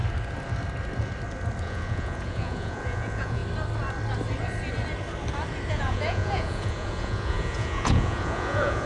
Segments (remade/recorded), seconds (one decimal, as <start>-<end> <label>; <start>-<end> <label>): 0.0-1.6 recorded; 1.6-3.4 remade; 3.4-5.7 recorded; 5.7-8.9 remade